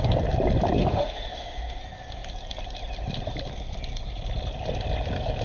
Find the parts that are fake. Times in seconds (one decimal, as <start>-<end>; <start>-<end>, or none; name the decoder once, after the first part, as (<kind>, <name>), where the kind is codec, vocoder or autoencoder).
0.8-1.8 (autoencoder, DAC-VAE)